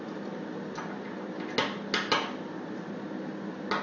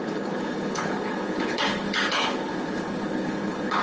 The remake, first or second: second